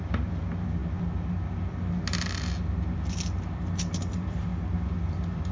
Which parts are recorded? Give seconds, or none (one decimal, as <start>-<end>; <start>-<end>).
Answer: 0.8-4.1; 4.5-5.1